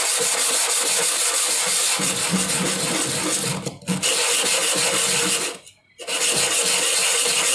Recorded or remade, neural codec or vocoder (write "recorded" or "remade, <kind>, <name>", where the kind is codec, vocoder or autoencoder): recorded